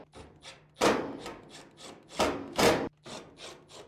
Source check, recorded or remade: recorded